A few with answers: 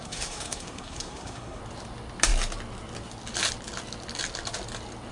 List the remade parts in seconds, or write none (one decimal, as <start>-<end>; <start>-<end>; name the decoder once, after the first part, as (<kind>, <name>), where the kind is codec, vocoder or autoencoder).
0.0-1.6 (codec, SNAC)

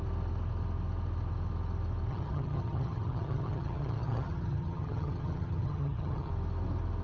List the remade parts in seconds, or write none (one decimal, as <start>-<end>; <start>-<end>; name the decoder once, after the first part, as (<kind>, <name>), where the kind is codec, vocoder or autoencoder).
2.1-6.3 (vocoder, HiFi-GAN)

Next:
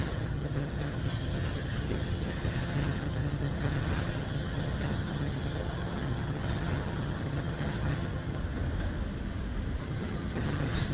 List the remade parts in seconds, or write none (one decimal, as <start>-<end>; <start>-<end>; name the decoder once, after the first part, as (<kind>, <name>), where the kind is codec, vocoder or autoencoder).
0.0-8.4 (vocoder, HiFi-GAN); 9.8-10.9

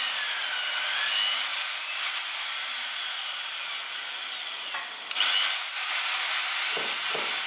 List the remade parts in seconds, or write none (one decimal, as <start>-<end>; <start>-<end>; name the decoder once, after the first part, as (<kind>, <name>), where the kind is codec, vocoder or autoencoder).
none